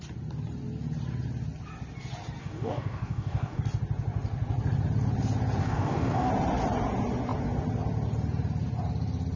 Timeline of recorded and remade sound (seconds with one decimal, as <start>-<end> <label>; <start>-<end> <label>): 0.0-2.4 recorded; 2.4-3.6 remade; 3.6-5.6 recorded; 5.6-6.3 remade; 6.3-9.4 recorded